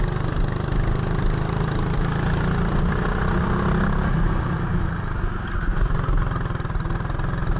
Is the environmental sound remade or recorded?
recorded